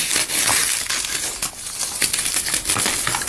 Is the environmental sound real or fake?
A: real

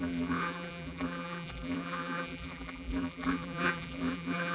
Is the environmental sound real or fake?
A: fake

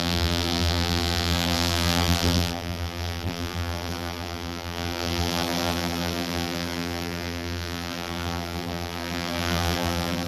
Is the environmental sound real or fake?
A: fake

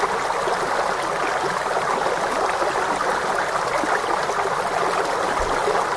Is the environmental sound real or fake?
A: real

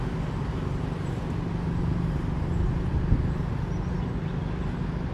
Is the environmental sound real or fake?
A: real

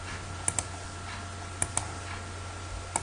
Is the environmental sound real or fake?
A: real